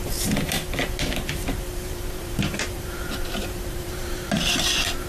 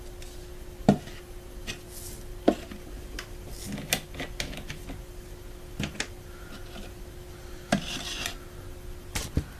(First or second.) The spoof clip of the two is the first